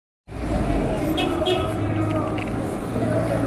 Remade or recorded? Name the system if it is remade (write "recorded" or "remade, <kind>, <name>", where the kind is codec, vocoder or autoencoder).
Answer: recorded